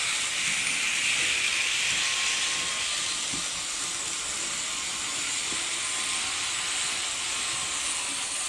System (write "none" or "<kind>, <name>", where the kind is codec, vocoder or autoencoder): none